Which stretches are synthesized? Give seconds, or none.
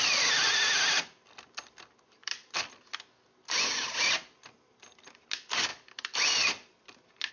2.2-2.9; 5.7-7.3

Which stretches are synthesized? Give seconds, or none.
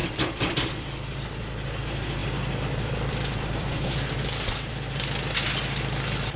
0.0-1.4; 2.2-4.7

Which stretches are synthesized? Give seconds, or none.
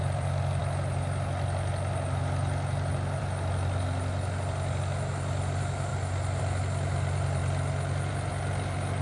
0.0-0.6; 3.2-5.9; 6.4-7.4; 8.1-9.0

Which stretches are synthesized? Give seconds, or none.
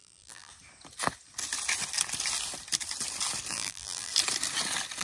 0.0-0.5; 3.5-4.1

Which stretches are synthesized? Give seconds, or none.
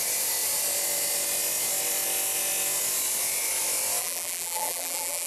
4.0-5.3